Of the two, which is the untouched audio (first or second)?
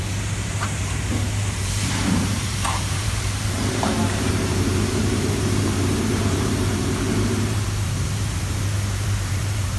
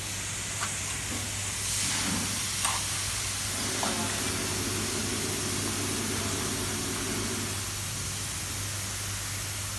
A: second